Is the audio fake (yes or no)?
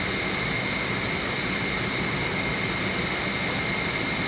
no